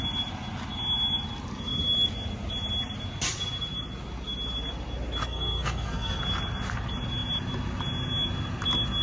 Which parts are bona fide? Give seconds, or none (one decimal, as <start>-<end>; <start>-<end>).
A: 0.0-5.2; 6.2-9.0